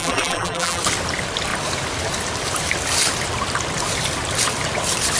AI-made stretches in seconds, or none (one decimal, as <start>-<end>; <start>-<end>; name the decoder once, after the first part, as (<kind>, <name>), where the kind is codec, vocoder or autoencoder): 0.0-0.8 (vocoder, BigVGAN v2)